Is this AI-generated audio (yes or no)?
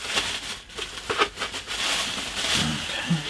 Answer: no